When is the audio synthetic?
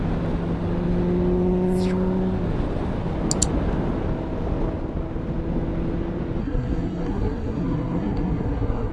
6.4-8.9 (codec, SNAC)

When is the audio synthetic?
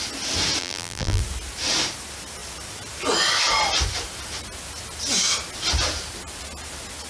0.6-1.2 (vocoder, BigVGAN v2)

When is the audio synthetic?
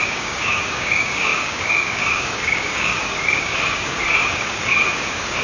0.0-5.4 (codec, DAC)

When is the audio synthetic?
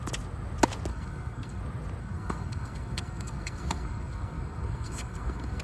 0.9-1.6 (codec, SNAC); 2.0-5.6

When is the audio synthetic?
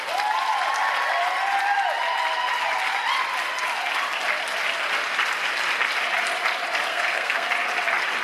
6.9-7.5 (codec, SNAC)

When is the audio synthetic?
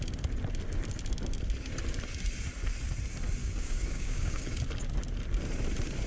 3.4-4.6 (codec, DAC)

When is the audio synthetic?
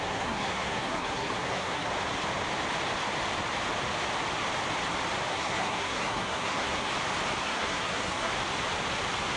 0.0-1.9 (codec, SNAC); 5.3-6.9; 7.4-8.3